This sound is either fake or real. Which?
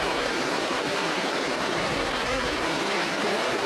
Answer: fake